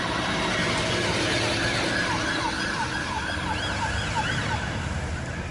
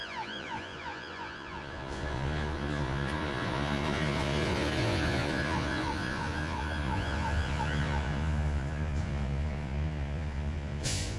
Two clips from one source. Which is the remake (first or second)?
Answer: second